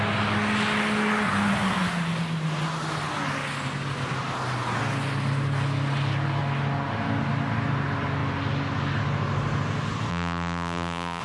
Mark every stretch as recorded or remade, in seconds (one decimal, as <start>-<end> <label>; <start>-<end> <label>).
0.0-10.1 recorded; 10.1-11.2 remade